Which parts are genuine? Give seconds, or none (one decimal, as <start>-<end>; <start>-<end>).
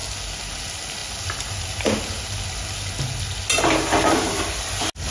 0.0-5.1